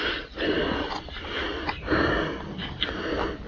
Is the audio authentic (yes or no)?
yes